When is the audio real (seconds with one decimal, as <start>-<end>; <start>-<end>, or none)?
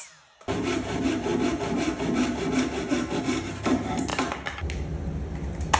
1.3-3.2; 4.1-5.8